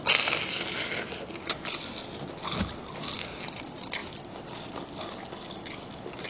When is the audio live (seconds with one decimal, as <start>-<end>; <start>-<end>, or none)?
0.0-6.3